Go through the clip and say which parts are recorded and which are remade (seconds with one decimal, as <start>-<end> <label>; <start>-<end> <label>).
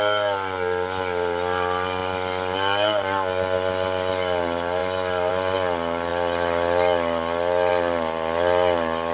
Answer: 0.0-9.1 recorded